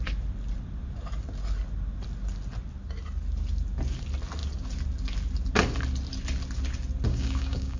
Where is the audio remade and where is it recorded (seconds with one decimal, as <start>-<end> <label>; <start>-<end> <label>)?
0.0-7.1 recorded; 7.1-7.8 remade